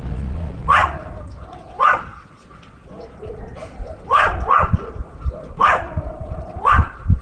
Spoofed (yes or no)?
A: yes